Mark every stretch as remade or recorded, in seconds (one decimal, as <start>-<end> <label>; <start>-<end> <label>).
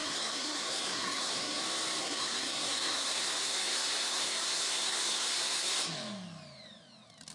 0.0-1.6 remade; 1.6-2.0 recorded; 2.0-5.9 remade; 5.9-7.3 recorded